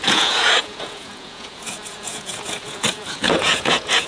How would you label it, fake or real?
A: fake